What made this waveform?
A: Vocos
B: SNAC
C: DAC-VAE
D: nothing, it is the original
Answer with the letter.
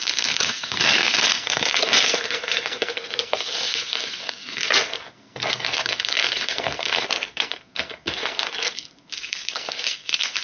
B